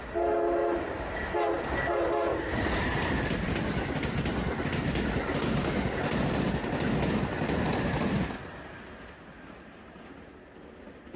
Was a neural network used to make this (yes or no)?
no